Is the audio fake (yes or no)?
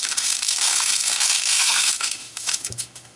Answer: yes